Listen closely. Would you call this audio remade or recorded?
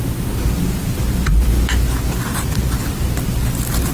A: recorded